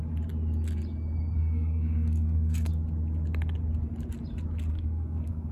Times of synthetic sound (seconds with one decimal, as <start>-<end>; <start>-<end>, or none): 1.4-2.7; 4.7-5.5

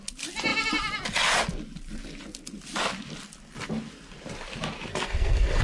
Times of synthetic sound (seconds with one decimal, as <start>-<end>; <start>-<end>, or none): 4.9-5.6

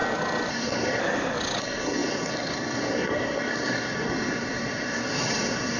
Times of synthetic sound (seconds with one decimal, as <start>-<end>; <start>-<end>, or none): 0.5-1.0; 1.6-5.8

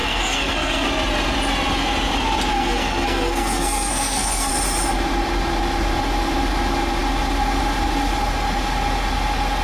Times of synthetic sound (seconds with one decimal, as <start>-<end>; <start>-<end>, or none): 0.0-0.9; 2.5-4.5